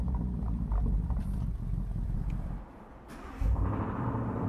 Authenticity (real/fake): fake